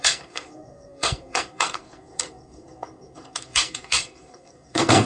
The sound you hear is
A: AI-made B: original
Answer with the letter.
A